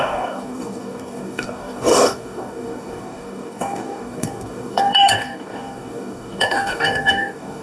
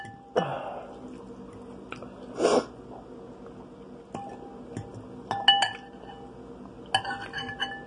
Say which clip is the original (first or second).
second